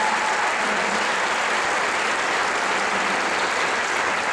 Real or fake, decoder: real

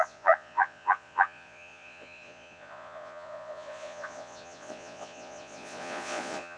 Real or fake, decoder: fake, vocoder, Vocos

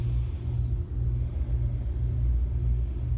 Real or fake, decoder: real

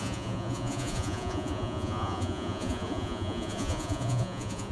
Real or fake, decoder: fake, vocoder, Vocos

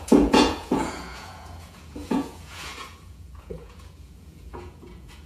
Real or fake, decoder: fake, vocoder, Vocos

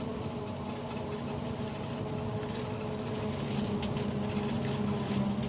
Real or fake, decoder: real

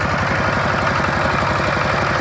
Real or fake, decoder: real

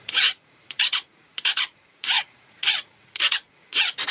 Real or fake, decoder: fake, vocoder, Vocos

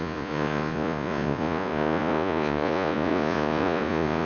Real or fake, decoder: fake, vocoder, Vocos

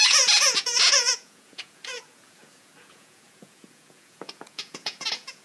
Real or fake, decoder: fake, vocoder, Vocos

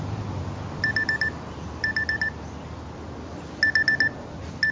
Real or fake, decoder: real